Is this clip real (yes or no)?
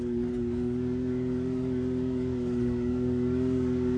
no